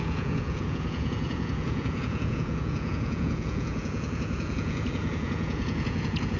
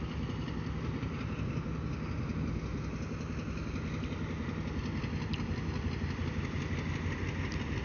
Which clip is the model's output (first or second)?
first